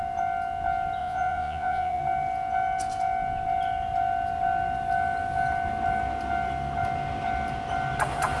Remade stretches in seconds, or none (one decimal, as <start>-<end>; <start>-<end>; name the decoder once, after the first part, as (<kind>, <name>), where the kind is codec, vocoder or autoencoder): 1.0-2.0 (vocoder, Vocos)